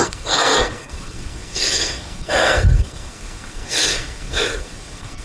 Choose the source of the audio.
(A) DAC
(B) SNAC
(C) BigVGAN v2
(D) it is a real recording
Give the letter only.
B